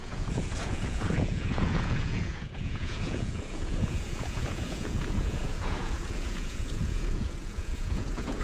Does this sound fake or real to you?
fake